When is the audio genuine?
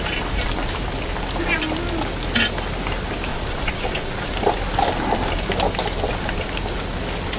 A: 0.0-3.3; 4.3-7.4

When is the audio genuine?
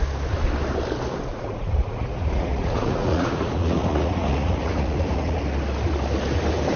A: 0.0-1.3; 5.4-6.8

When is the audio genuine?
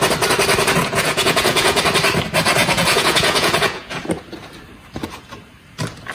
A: 0.0-0.8; 1.8-2.6; 4.0-6.1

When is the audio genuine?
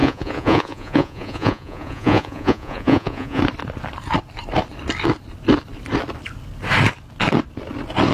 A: 3.4-8.1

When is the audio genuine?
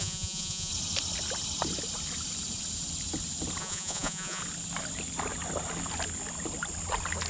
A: 0.7-3.6; 4.4-7.3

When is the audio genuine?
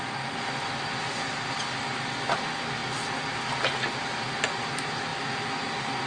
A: 0.0-6.1